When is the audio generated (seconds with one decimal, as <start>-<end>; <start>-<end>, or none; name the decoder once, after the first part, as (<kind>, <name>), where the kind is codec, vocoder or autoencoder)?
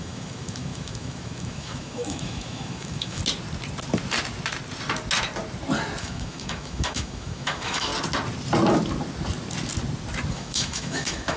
0.0-3.2 (autoencoder, DAC-VAE); 6.0-7.9; 10.3-11.4